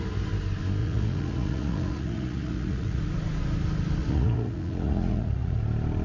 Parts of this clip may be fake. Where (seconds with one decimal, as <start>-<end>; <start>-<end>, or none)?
0.8-3.0; 4.0-5.6